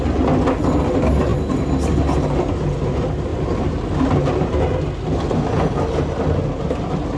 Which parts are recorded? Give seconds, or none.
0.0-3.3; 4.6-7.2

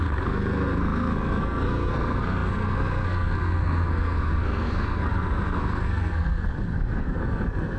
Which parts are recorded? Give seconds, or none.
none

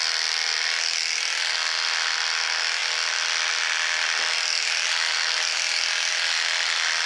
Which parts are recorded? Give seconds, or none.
0.0-7.1

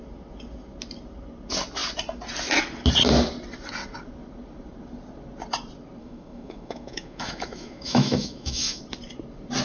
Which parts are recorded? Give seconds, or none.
0.0-6.0; 8.8-9.6